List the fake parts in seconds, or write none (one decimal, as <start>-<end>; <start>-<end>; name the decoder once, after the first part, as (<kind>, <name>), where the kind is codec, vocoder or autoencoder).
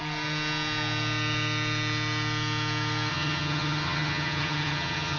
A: 3.1-5.2 (vocoder, HiFi-GAN)